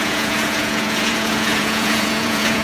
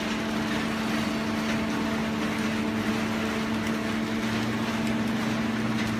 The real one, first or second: second